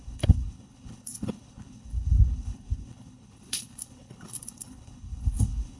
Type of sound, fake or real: fake